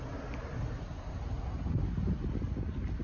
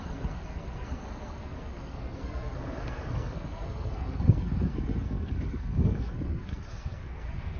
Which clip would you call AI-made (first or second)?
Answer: second